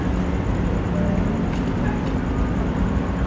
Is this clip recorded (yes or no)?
yes